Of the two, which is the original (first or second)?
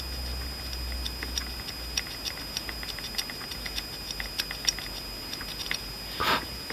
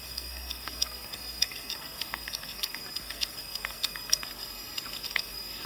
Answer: first